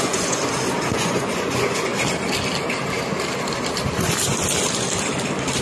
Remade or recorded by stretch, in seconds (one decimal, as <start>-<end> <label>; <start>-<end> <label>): 0.0-0.4 remade; 0.4-0.9 recorded; 0.9-1.9 remade; 1.9-5.6 recorded